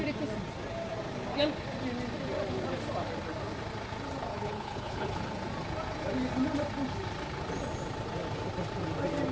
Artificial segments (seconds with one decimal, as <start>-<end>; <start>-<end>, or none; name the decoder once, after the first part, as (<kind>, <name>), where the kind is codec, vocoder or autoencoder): 4.3-5.3 (codec, HILCodec)